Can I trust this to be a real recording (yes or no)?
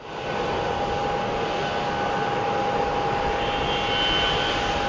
yes